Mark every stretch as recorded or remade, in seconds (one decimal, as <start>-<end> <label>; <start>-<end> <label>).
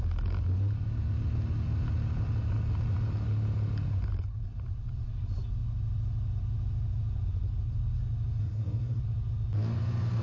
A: 0.0-8.4 recorded; 8.4-9.0 remade; 9.0-10.2 recorded